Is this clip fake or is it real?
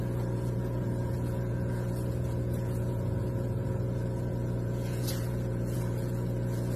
fake